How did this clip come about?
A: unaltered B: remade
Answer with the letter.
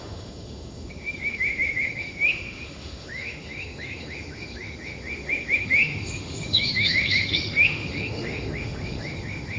B